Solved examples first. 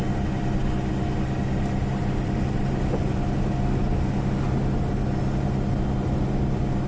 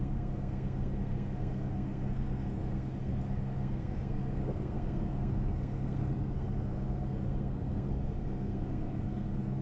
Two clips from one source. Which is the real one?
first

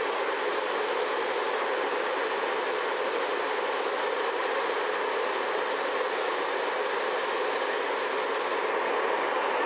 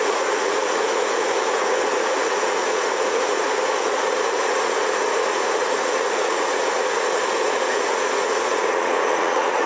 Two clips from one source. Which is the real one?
first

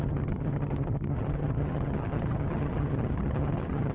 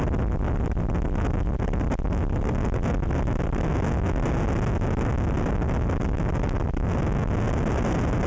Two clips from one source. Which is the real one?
second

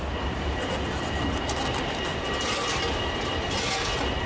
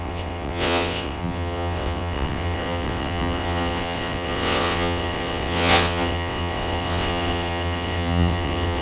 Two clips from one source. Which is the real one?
first